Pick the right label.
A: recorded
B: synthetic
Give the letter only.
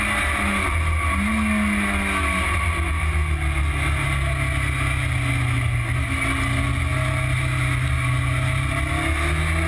A